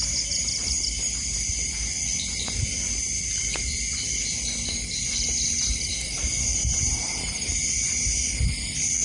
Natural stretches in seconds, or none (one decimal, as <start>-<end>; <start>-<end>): 0.0-9.0